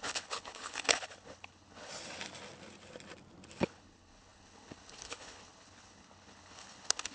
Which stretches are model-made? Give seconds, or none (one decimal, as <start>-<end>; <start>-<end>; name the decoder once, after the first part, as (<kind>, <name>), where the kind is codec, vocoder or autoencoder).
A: 0.0-1.9 (codec, HILCodec); 3.6-7.1